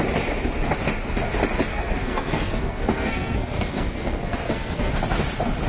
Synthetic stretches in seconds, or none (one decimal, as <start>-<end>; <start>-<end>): 1.7-4.9